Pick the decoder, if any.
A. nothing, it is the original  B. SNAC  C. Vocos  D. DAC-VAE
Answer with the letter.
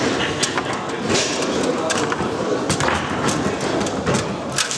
A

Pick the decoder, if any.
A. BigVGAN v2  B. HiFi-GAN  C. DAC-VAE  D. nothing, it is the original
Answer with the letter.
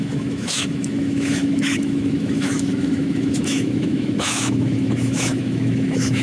C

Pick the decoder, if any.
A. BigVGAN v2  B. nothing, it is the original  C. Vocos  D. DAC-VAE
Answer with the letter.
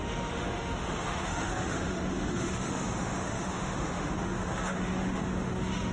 D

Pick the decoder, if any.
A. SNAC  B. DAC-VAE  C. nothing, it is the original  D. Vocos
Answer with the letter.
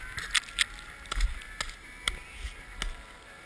C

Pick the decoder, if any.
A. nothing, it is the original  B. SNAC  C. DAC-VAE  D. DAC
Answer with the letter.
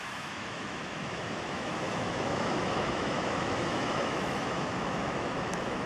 C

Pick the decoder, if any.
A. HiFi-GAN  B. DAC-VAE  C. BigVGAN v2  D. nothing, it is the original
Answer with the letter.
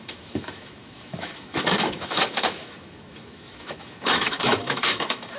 B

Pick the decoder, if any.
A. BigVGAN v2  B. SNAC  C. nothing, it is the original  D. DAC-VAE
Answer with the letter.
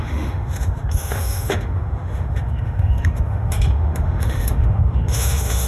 D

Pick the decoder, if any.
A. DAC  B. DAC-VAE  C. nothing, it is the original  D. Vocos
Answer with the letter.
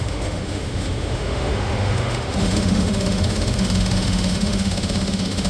B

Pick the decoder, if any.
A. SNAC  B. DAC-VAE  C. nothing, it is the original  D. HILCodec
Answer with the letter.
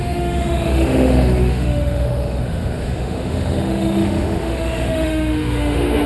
B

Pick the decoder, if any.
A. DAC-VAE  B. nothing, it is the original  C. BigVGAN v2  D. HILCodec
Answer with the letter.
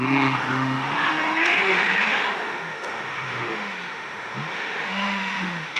A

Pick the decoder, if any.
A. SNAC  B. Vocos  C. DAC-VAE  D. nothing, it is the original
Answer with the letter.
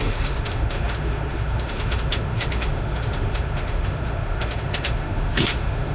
C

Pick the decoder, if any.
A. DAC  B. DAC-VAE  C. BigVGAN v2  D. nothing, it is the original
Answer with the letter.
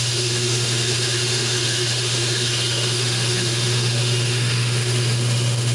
B